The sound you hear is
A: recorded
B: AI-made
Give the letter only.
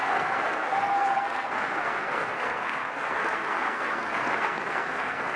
B